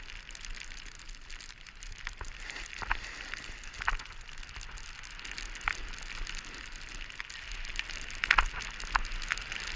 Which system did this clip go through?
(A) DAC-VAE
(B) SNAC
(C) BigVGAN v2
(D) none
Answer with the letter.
D